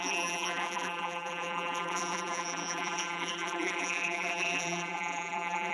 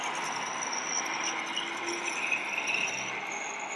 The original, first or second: second